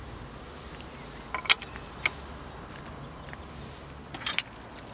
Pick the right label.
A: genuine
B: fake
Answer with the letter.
A